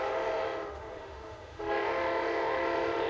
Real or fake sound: fake